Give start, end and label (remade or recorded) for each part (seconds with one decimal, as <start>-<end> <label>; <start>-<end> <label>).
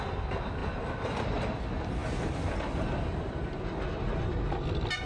0.0-5.1 recorded